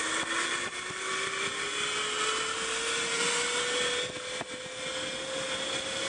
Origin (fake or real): real